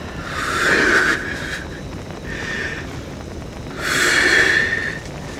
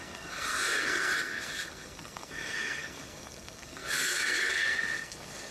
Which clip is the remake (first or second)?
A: second